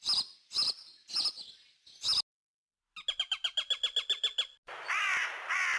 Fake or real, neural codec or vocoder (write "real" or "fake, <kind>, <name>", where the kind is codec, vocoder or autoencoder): real